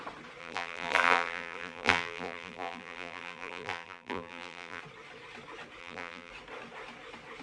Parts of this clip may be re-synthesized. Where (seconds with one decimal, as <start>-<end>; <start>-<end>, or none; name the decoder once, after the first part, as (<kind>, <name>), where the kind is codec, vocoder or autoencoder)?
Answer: 0.4-4.8 (vocoder, BigVGAN v2); 5.8-6.3